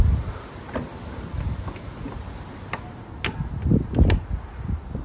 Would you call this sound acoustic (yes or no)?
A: yes